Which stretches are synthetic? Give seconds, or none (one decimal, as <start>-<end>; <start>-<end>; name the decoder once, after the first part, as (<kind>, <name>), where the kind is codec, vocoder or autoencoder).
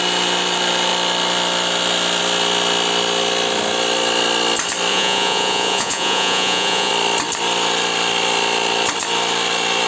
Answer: 4.9-6.9 (vocoder, Vocos)